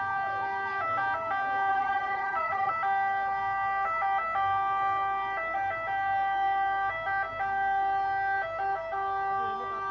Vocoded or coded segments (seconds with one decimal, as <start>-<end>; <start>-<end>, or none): 1.7-2.7